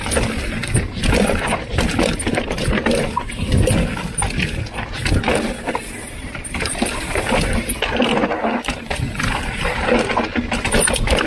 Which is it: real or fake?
real